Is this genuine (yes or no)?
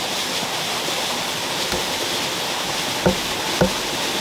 yes